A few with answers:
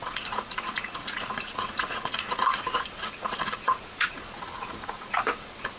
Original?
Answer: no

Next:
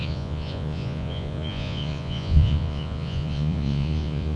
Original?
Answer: no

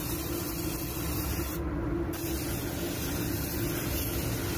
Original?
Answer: yes